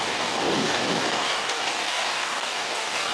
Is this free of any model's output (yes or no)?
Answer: no